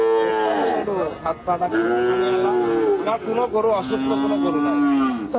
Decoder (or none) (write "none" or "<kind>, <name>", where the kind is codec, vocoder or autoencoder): none